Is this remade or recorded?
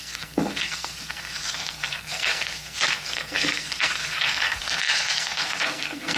remade